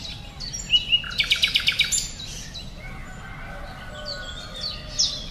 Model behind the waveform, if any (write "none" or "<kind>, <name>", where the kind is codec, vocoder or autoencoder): none